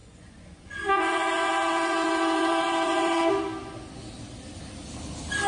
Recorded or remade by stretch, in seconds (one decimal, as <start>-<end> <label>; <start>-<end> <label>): 0.0-3.3 remade; 3.3-5.5 recorded